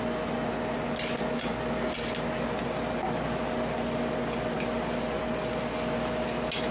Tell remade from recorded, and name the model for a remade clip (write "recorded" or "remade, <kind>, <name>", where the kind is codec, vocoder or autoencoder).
recorded